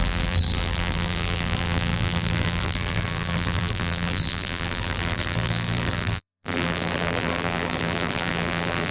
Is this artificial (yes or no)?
yes